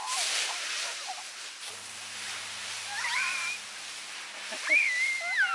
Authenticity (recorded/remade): remade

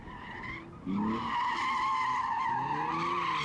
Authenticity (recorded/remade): recorded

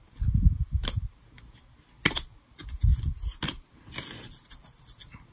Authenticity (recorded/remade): recorded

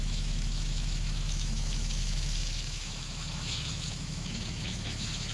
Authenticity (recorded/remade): remade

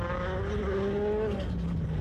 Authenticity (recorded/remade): recorded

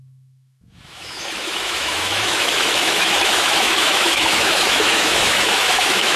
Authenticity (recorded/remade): remade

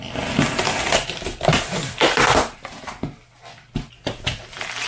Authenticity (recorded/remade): recorded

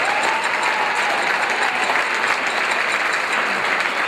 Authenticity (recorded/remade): recorded